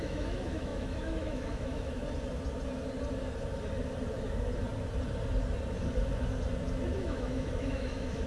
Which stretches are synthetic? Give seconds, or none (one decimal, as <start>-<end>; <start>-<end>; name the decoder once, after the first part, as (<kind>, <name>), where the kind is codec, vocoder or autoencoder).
0.0-2.0 (autoencoder, DAC-VAE); 7.0-8.3